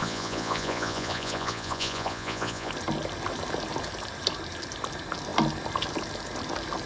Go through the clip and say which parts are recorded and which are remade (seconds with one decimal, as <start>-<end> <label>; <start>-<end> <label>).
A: 0.0-2.7 remade; 2.7-6.9 recorded